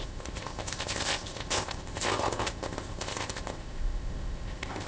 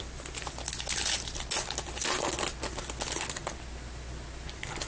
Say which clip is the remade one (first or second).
first